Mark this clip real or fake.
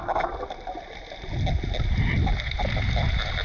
real